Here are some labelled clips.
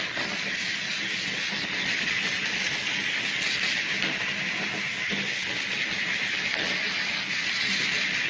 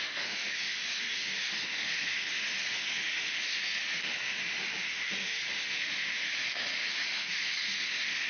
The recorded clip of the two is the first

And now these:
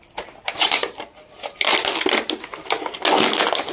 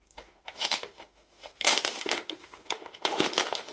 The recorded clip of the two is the first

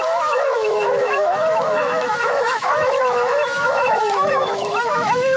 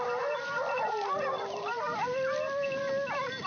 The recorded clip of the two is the second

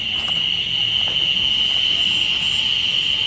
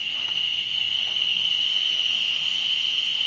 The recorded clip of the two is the first